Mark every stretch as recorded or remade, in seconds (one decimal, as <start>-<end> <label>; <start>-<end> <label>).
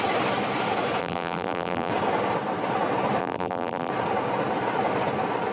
0.0-1.0 recorded; 1.0-1.9 remade; 1.9-3.2 recorded; 3.2-3.9 remade; 3.9-5.5 recorded